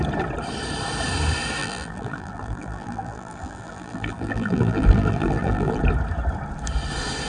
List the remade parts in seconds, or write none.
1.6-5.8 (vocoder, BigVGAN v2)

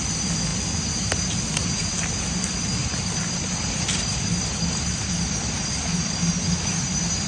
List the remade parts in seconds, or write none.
2.8-6.2 (vocoder, BigVGAN v2)

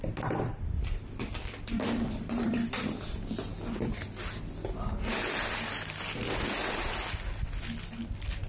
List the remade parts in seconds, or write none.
0.0-3.5 (vocoder, BigVGAN v2)

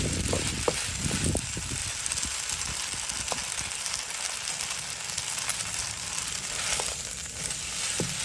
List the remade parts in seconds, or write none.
5.5-7.3 (vocoder, BigVGAN v2)

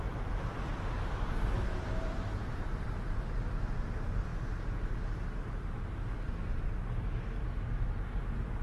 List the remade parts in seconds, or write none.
1.7-2.9 (vocoder, BigVGAN v2)

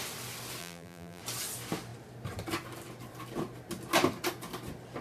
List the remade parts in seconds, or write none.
0.6-1.2 (vocoder, BigVGAN v2)